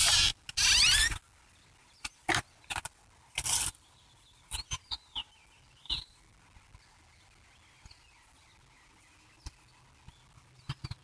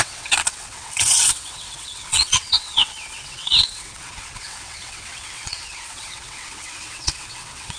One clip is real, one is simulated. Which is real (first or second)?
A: first